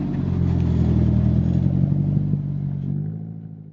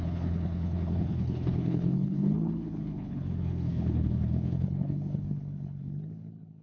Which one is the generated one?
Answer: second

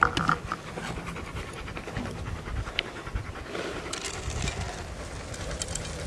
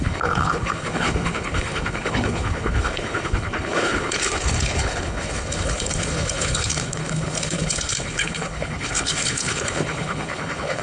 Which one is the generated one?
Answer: second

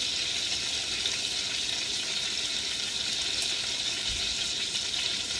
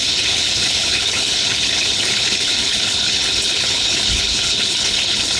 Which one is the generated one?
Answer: second